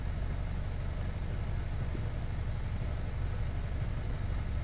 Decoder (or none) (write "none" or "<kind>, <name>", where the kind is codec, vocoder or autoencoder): none